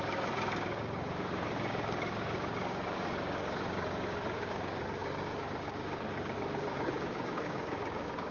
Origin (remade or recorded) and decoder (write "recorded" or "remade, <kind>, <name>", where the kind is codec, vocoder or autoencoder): remade, codec, DAC